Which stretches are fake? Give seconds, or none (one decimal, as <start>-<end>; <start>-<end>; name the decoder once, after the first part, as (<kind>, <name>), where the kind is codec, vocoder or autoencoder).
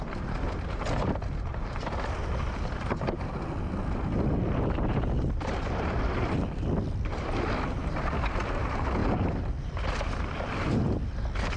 0.0-11.6 (vocoder, BigVGAN v2)